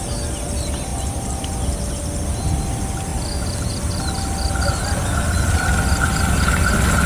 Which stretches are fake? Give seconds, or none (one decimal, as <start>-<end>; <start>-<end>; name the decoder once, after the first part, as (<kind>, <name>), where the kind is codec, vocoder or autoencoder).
0.9-1.9 (vocoder, BigVGAN v2)